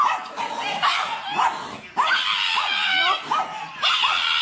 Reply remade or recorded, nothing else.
recorded